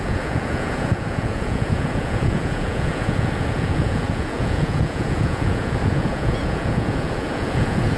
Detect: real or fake fake